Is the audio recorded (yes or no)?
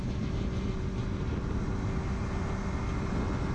yes